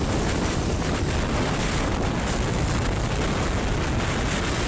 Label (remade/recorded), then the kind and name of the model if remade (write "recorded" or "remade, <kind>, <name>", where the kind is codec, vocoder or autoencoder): recorded